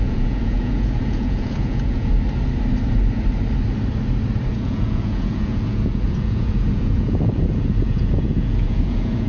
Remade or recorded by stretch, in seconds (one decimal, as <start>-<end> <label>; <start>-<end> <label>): 0.0-2.1 remade; 2.1-4.5 recorded; 4.5-9.3 remade